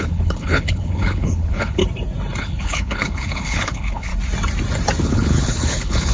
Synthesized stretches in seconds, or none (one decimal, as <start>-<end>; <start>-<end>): 0.0-1.8; 2.4-4.1; 5.0-6.1